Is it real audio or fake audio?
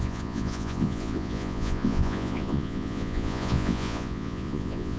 fake